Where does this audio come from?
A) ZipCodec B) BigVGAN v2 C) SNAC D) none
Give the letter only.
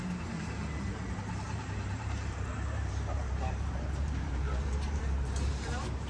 B